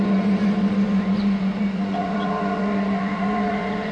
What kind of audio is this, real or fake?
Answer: fake